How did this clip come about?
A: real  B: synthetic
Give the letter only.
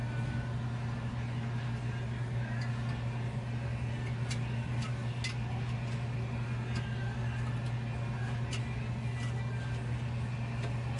A